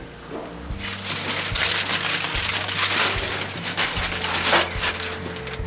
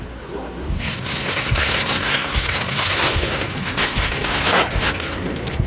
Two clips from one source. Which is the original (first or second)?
first